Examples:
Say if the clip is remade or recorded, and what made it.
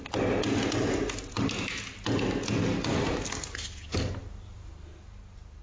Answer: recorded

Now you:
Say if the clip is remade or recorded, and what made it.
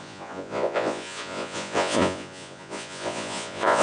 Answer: remade, vocoder, Vocos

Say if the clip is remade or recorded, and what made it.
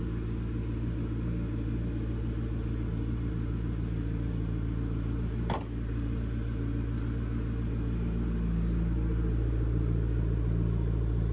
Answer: recorded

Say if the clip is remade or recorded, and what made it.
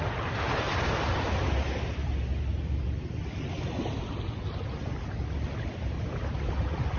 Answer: recorded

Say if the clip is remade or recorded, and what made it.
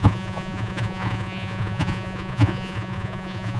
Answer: remade, vocoder, Vocos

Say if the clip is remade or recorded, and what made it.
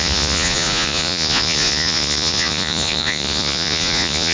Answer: remade, vocoder, Vocos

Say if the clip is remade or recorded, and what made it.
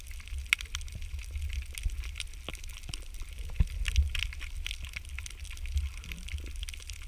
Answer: recorded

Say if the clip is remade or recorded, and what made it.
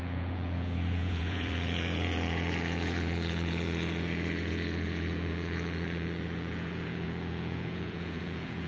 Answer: remade, vocoder, Vocos